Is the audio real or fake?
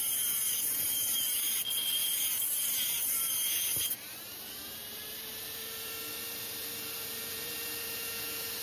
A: fake